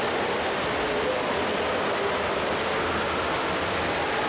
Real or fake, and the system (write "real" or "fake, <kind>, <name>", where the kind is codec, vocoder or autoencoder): real